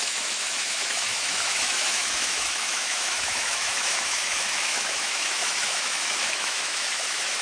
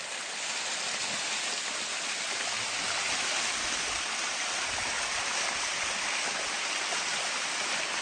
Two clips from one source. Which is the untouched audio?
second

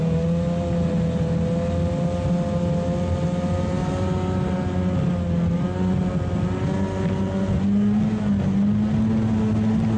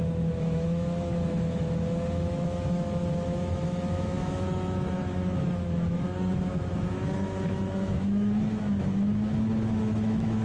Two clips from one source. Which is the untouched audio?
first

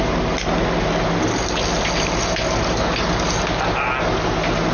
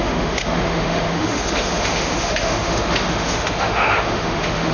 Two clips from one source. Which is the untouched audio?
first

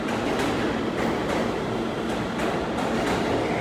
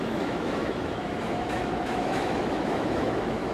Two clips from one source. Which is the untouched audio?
first